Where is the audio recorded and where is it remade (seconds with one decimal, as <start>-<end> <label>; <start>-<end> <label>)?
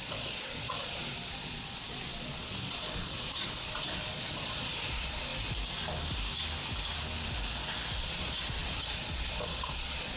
0.0-5.3 remade; 5.3-8.0 recorded; 8.0-10.2 remade